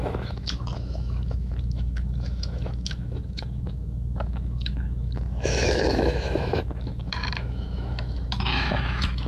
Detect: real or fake fake